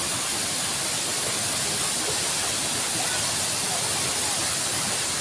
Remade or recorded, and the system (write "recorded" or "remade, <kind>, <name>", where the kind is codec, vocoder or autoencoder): recorded